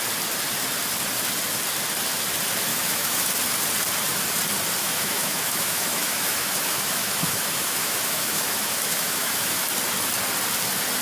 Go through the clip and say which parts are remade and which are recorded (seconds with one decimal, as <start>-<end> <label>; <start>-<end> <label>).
0.0-2.7 recorded; 2.7-3.3 remade; 3.3-4.8 recorded; 4.8-9.7 remade; 9.7-11.0 recorded